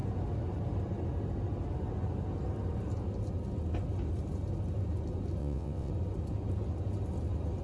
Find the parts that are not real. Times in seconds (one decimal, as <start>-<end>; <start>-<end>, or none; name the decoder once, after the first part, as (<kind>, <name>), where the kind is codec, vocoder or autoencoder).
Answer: 5.4-5.9 (vocoder, WaveNeXt)